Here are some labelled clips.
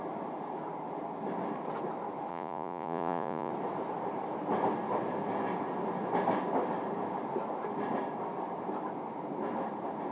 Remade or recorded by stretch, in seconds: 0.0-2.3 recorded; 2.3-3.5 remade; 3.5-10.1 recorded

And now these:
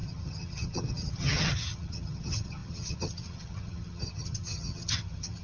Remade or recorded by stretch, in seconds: 0.0-5.4 remade